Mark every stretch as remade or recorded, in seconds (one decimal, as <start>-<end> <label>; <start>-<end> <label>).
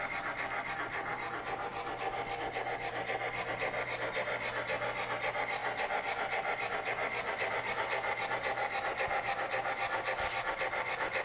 0.0-11.2 recorded